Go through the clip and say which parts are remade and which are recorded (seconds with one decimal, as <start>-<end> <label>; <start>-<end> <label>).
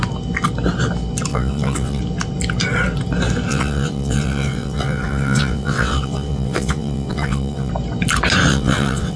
0.0-1.3 recorded; 1.3-2.0 remade; 2.0-3.5 recorded; 3.5-7.7 remade; 7.7-8.5 recorded; 8.5-9.2 remade